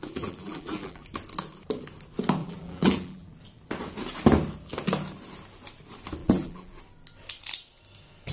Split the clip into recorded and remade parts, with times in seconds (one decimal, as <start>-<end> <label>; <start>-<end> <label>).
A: 0.0-1.1 remade; 1.1-2.4 recorded; 2.4-3.3 remade; 3.3-6.2 recorded; 6.2-6.8 remade; 6.8-8.3 recorded